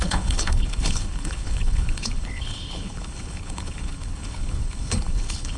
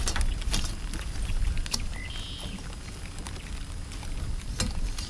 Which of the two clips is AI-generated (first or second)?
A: first